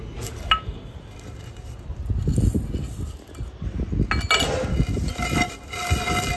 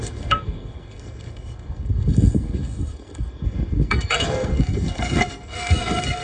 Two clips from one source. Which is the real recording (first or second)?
first